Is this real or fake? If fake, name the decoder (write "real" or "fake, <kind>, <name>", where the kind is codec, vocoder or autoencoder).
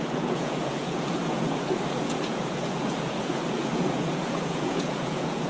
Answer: fake, vocoder, Vocos